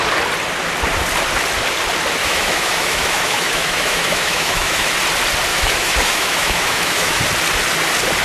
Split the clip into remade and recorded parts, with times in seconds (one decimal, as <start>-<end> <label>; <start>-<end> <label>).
0.0-2.2 recorded; 2.2-4.9 remade; 4.9-5.5 recorded; 5.5-7.2 remade; 7.2-8.2 recorded